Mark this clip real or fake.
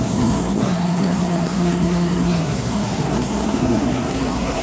fake